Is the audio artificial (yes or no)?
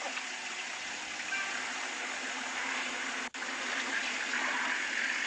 no